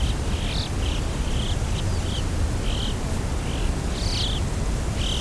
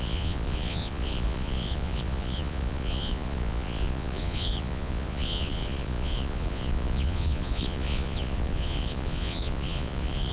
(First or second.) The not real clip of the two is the second